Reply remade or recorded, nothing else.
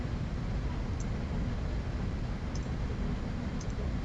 recorded